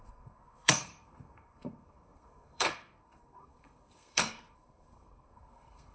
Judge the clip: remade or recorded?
remade